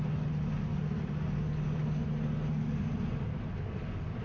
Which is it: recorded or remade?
recorded